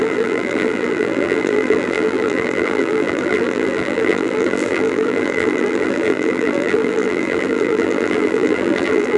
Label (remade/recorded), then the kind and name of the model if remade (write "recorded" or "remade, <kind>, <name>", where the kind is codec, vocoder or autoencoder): remade, vocoder, BigVGAN v2